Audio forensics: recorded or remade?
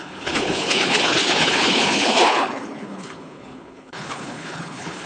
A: remade